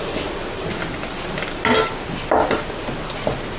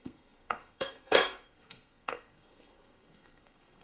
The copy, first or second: second